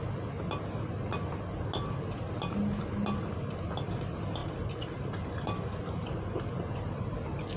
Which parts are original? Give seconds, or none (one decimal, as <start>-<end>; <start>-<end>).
0.0-4.4; 5.1-7.6